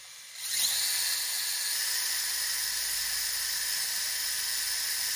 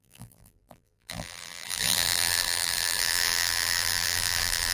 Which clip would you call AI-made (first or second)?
second